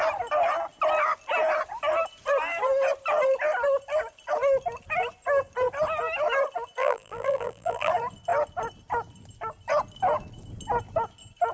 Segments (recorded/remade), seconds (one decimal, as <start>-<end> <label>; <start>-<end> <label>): 0.0-6.8 recorded; 6.8-7.9 remade; 7.9-11.5 recorded